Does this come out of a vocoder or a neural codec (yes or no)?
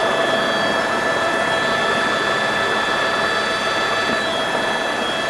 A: no